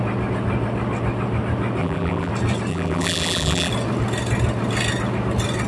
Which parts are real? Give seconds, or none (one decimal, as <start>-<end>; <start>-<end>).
0.0-1.8; 2.3-2.7; 3.7-5.7